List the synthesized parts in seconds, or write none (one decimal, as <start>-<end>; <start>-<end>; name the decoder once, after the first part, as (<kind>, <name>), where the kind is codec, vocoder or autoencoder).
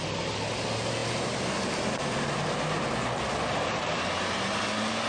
none